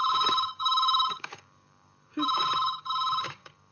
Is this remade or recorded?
remade